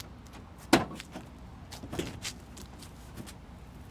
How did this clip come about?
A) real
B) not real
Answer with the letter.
A